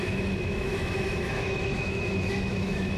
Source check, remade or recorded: remade